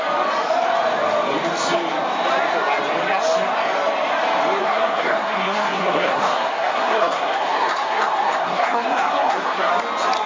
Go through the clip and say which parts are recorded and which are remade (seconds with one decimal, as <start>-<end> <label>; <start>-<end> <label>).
0.0-4.6 recorded; 4.6-9.7 remade; 9.7-10.3 recorded